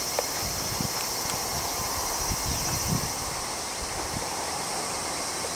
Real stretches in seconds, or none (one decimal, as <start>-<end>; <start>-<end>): 0.0-5.5